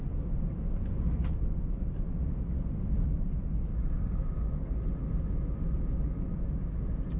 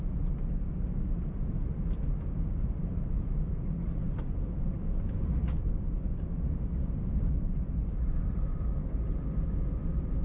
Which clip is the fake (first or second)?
second